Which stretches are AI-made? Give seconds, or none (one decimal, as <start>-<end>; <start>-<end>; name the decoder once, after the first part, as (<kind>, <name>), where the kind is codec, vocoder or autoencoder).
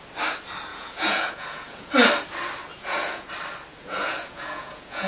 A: 0.7-1.9 (vocoder, Vocos); 2.7-3.3; 3.7-5.1